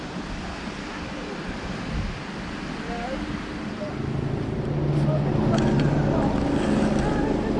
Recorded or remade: recorded